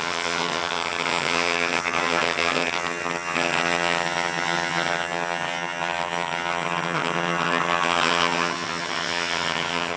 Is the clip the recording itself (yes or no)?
no